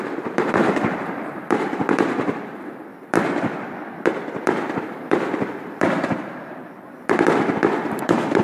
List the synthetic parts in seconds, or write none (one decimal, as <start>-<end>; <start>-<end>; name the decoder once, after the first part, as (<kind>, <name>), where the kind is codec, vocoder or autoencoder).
0.0-2.9 (vocoder, BigVGAN v2); 4.8-6.6; 7.9-8.4